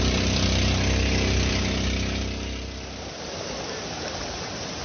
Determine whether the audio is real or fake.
real